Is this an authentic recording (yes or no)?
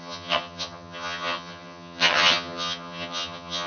no